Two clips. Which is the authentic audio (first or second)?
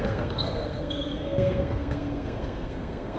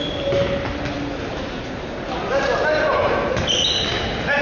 second